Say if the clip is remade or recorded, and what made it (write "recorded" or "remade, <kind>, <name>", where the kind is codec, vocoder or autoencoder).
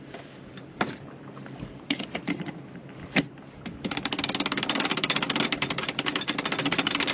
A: recorded